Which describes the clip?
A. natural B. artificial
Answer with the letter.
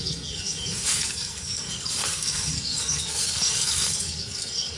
B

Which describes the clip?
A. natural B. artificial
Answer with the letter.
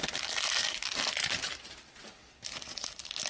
A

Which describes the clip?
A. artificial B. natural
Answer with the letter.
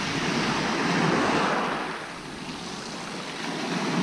B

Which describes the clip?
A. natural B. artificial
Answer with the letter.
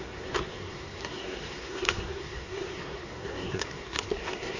B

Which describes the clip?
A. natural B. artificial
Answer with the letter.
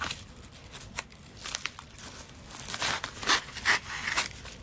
A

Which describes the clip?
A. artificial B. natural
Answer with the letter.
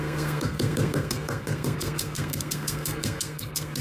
A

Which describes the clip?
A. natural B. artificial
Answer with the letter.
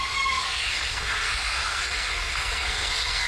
B